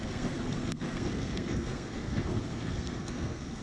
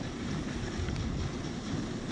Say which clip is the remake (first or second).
first